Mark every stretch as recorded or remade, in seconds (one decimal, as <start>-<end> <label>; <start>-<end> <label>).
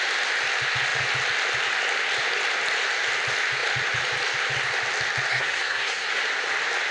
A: 0.0-5.3 recorded; 5.3-6.2 remade; 6.2-6.9 recorded